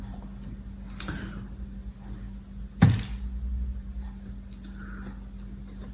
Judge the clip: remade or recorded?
recorded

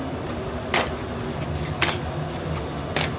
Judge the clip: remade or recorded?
recorded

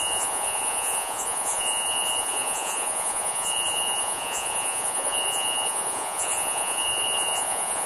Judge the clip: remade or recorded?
remade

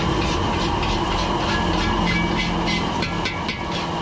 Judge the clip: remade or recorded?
recorded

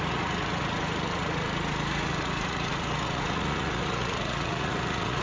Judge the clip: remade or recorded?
remade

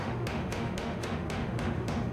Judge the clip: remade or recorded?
remade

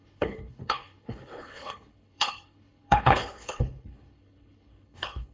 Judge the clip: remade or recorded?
remade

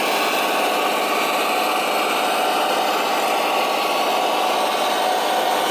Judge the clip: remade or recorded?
recorded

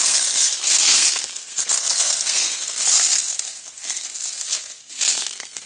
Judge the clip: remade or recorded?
remade